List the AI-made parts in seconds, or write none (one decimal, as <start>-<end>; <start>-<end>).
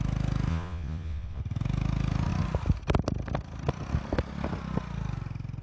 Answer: 0.5-1.4